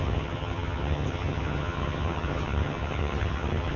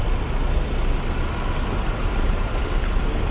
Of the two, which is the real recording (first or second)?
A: second